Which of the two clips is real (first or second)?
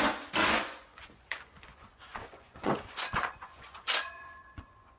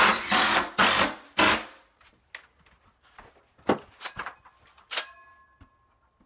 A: second